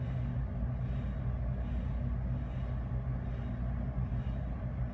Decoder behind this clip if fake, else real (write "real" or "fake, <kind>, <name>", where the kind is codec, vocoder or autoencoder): real